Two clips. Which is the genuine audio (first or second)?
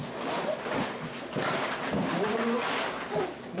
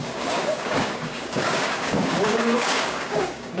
first